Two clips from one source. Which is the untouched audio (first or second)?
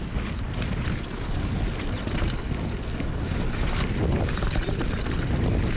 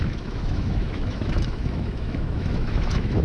first